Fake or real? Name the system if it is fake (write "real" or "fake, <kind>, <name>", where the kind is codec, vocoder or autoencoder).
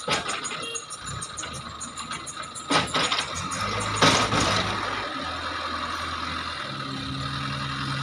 real